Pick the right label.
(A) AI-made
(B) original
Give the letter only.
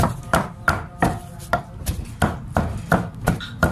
B